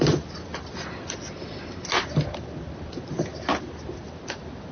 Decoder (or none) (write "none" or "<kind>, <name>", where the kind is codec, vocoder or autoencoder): none